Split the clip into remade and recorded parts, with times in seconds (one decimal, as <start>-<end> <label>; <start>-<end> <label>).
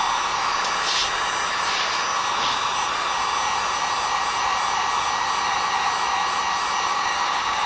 0.0-6.9 recorded; 6.9-7.7 remade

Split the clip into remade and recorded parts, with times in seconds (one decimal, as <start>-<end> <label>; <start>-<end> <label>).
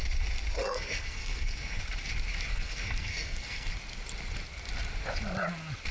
0.0-0.6 recorded; 0.6-1.8 remade; 1.8-2.5 recorded; 2.5-3.7 remade; 3.7-5.9 recorded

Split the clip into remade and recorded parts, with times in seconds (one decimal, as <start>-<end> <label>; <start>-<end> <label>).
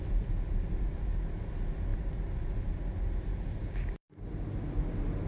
0.0-5.3 recorded